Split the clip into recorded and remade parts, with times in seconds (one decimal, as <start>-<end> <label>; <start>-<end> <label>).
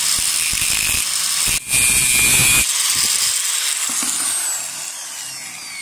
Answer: 0.0-5.8 recorded